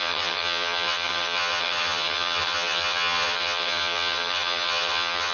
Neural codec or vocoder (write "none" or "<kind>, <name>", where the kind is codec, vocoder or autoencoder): vocoder, HiFi-GAN